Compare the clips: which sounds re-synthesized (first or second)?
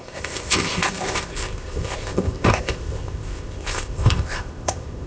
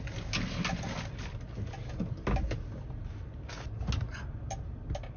first